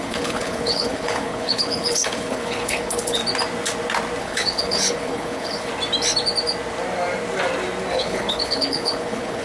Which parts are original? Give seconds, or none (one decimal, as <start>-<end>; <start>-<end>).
3.2-4.2; 5.7-7.9